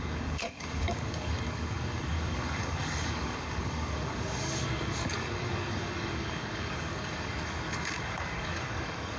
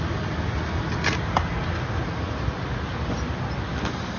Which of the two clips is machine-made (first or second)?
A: first